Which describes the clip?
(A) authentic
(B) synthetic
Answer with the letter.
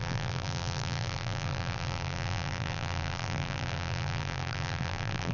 B